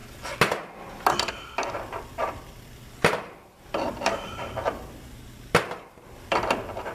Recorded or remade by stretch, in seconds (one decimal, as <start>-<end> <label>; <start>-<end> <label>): 0.0-1.3 recorded; 1.3-6.9 remade